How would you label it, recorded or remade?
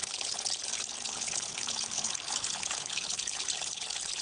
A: remade